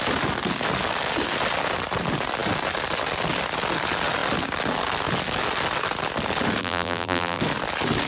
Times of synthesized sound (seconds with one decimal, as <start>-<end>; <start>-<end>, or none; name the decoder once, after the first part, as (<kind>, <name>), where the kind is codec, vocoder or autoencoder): 6.6-7.4 (vocoder, BigVGAN v2)